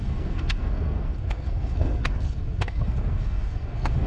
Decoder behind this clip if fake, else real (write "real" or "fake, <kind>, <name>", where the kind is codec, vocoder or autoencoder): fake, codec, SNAC